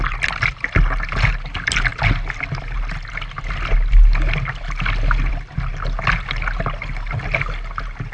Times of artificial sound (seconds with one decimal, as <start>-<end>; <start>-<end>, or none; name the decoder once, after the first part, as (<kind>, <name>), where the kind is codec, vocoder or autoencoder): none